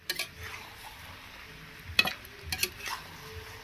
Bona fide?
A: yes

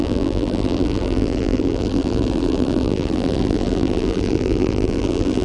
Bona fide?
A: no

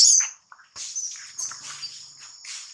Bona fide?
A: yes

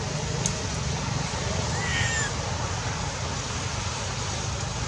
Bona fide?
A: yes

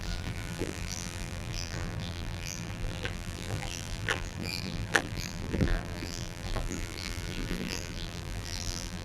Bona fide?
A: no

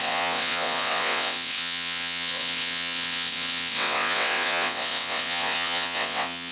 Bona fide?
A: no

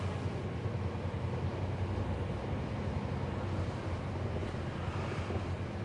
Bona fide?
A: yes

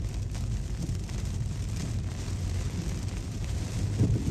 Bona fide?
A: no